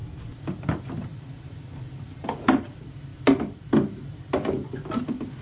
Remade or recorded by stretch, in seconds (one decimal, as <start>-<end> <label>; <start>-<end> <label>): 0.0-1.1 recorded; 1.1-2.6 remade; 2.6-5.4 recorded